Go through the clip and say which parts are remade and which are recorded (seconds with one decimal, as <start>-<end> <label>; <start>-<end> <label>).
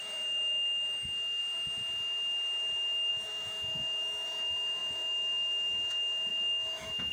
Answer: 0.0-1.4 remade; 1.4-3.1 recorded; 3.1-7.1 remade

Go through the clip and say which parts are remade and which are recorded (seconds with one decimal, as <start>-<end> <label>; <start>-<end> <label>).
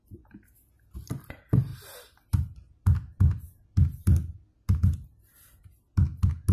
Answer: 0.0-6.5 recorded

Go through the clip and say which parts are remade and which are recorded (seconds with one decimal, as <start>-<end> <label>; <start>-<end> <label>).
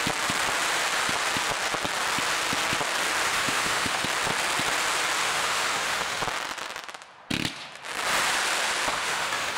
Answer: 0.0-3.3 recorded; 3.3-4.0 remade; 4.0-5.2 recorded; 5.2-6.2 remade; 6.2-8.9 recorded; 8.9-9.6 remade